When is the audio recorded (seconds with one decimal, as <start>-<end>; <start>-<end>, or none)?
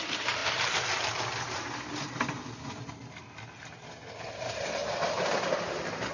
0.0-4.8